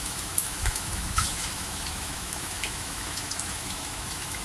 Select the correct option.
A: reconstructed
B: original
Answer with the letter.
A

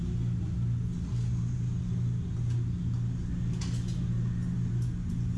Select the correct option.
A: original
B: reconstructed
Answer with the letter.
A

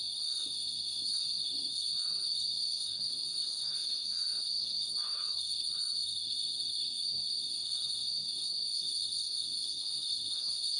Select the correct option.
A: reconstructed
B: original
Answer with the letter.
A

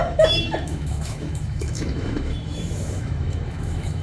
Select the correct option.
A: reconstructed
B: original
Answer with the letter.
A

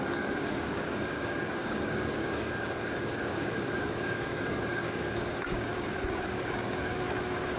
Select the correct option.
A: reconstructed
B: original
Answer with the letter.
A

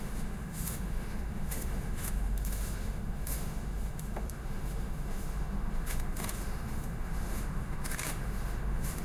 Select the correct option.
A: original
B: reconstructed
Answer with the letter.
B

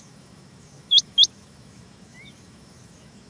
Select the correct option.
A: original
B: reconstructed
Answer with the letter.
B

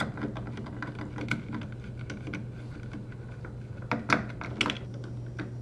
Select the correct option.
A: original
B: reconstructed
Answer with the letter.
A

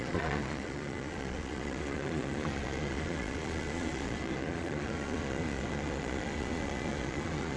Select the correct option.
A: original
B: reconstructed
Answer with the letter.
B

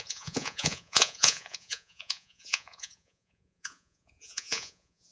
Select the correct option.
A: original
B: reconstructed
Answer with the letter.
B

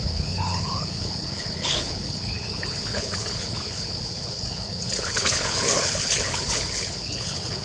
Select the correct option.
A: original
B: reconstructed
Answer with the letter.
B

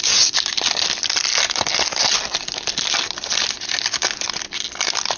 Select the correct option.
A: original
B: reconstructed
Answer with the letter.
A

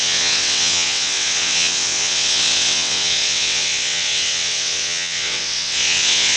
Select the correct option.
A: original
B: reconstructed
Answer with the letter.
B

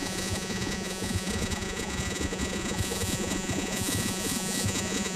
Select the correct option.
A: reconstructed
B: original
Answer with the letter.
A